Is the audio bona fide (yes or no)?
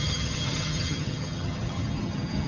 no